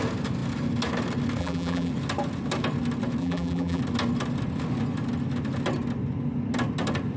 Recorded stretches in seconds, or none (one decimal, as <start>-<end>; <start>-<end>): 0.0-1.4; 1.9-3.2; 3.8-7.2